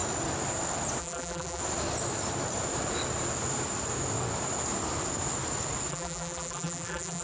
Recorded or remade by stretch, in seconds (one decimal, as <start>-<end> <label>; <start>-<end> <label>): 0.0-1.0 recorded; 1.0-1.6 remade; 1.6-5.9 recorded; 5.9-7.2 remade